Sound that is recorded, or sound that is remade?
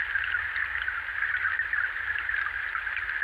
recorded